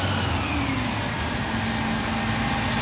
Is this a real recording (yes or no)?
yes